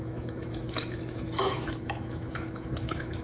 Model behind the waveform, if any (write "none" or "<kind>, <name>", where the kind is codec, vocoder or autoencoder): autoencoder, DAC-VAE